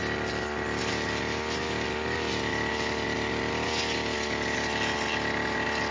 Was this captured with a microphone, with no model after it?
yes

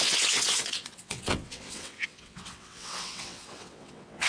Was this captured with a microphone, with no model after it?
no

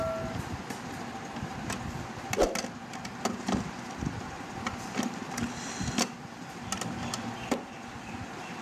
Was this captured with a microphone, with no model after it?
yes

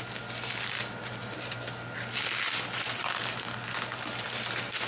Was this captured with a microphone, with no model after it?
yes